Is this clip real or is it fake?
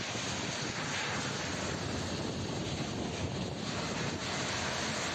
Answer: real